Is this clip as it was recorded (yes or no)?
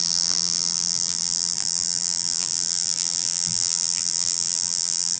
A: no